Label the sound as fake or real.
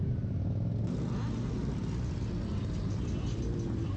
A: real